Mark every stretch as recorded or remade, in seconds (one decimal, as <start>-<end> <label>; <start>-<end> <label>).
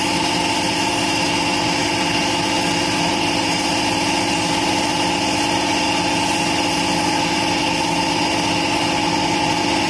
0.0-9.9 recorded